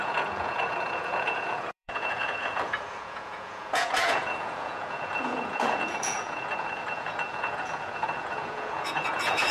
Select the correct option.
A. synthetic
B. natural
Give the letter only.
A